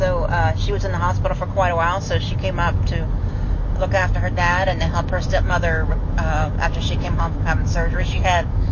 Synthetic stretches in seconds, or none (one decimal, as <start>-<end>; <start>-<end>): 4.0-8.7